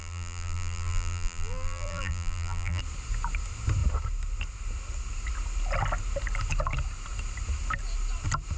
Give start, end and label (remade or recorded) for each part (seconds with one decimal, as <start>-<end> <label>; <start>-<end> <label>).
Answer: 0.0-2.8 remade; 2.8-8.6 recorded